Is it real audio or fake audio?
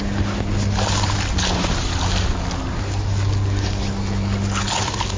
real